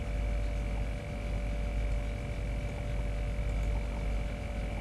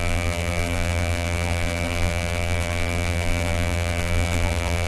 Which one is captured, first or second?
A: first